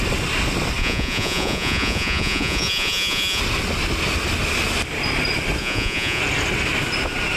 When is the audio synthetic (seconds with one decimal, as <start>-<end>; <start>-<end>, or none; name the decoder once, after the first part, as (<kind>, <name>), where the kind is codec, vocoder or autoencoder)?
0.8-3.4 (vocoder, Vocos); 5.6-6.2